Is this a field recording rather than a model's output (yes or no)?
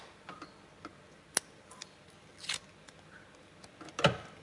yes